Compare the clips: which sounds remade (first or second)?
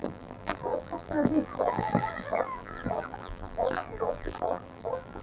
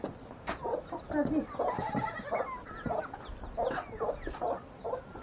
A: first